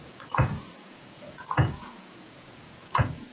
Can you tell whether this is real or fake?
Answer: fake